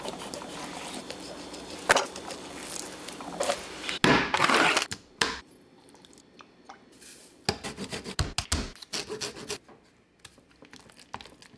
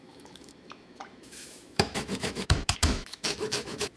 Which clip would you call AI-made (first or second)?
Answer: second